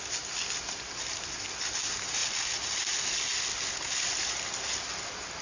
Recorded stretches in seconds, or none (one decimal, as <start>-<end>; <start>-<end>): 0.0-5.4